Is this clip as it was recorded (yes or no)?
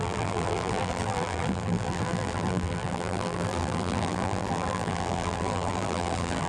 no